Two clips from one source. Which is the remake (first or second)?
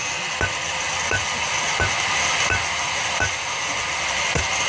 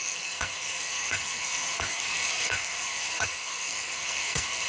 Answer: second